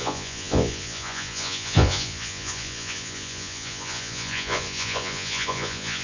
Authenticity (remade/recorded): remade